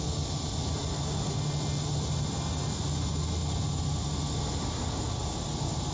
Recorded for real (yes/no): yes